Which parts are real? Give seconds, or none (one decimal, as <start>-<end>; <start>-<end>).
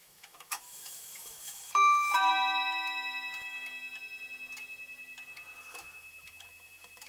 2.3-5.6